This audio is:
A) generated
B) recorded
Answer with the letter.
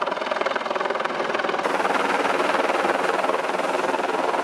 B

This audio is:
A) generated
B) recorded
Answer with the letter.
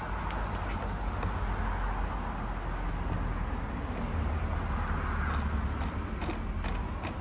B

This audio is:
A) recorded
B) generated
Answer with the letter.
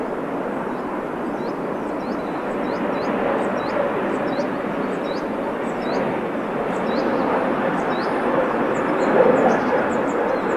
A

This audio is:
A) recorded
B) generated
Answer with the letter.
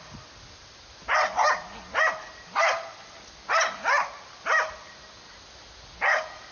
A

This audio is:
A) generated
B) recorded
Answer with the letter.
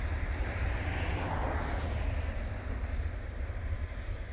B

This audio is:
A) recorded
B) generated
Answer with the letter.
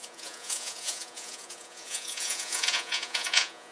B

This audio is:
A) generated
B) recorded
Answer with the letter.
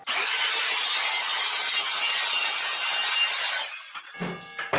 B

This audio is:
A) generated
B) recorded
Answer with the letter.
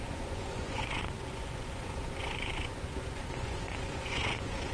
A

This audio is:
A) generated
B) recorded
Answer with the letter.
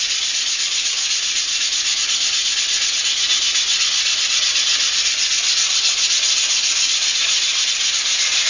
B